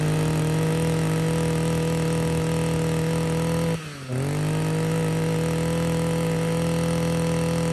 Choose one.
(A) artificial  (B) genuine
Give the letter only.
B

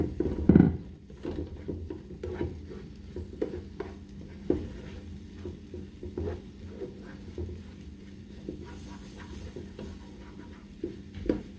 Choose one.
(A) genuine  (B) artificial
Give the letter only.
A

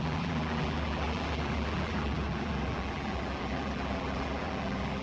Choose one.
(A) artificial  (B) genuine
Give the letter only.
A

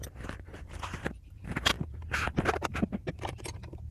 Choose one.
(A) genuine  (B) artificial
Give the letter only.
B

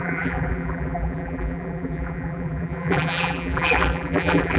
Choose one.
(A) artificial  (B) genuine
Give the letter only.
A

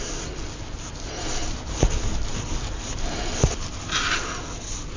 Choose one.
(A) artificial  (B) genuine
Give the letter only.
B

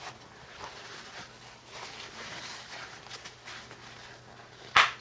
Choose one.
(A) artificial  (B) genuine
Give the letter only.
B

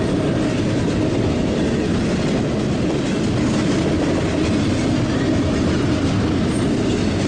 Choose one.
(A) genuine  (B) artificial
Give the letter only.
A